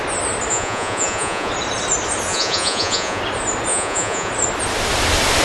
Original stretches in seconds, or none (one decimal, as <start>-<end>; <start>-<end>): 0.0-0.5; 1.5-2.3; 3.2-3.7; 4.3-5.4